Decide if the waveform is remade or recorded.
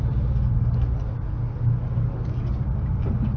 recorded